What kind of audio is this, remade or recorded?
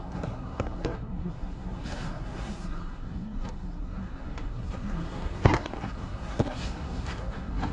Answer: remade